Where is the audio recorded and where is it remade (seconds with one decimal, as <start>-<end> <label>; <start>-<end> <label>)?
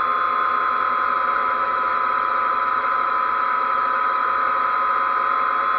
0.0-1.4 recorded; 1.4-4.9 remade; 4.9-5.8 recorded